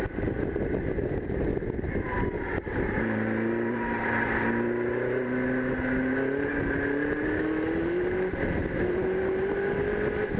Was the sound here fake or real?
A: real